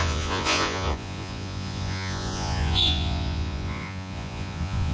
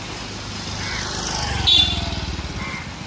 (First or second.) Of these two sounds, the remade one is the first